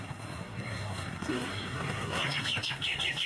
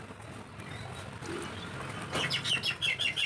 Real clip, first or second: second